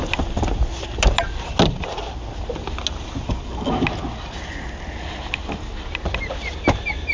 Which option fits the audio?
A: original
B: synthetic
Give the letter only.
A